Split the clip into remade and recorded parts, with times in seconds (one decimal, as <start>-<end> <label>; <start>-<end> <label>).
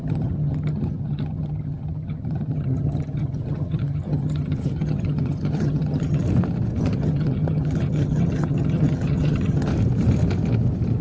0.0-6.2 remade; 6.2-6.8 recorded; 6.8-9.7 remade; 9.7-11.0 recorded